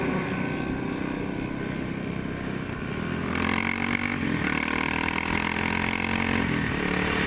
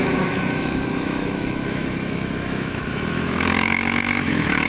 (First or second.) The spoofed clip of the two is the second